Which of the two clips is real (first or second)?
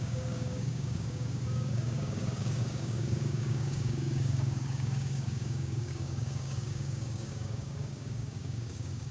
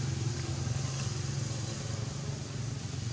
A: second